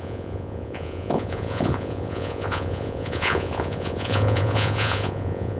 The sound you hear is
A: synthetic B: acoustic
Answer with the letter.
A